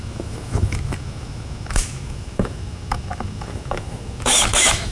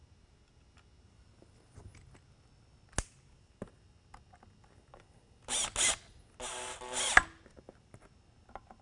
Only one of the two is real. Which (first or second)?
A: second